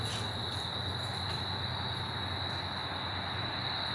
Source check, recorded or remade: recorded